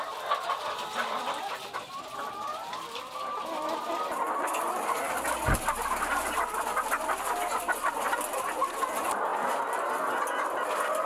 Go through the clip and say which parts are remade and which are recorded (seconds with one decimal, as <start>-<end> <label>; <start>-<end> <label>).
0.0-11.1 recorded